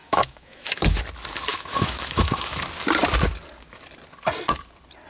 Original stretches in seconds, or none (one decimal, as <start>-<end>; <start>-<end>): 1.0-1.5; 2.6-5.1